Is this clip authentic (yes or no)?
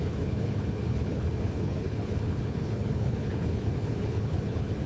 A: no